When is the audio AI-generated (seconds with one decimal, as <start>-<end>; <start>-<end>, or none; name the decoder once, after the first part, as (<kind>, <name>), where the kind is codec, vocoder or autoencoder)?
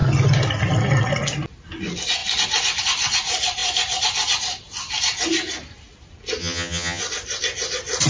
6.4-7.0 (vocoder, HiFi-GAN)